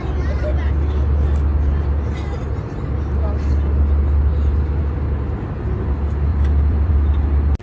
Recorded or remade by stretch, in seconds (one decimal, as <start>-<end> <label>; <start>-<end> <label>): 0.0-6.3 recorded; 6.3-6.9 remade; 6.9-7.6 recorded